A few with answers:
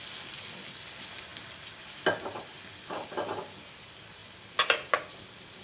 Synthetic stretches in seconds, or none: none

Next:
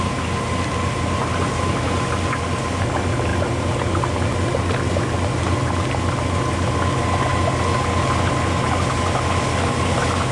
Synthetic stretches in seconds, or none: none